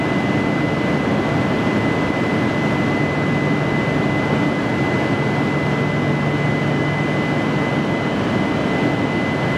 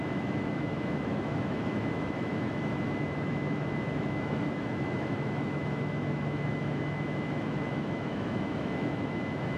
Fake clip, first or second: second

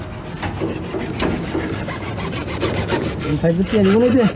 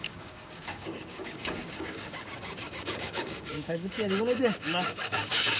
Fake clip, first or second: second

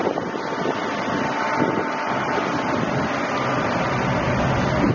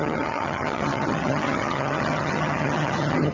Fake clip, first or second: second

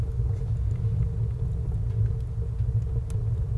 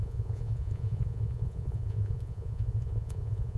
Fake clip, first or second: second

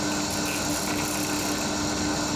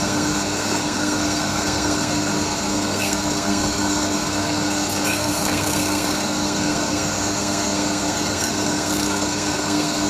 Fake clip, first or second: second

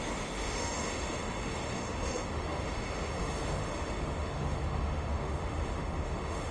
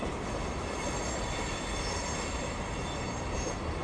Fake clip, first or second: first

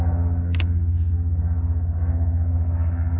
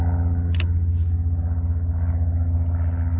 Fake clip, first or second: first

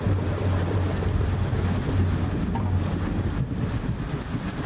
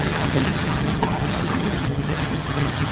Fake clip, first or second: second